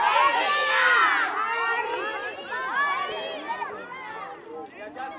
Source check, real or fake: real